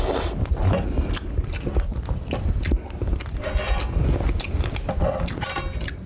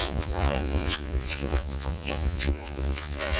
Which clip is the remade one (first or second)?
second